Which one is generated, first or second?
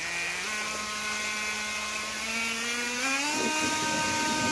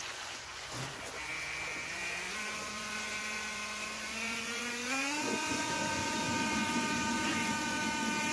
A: second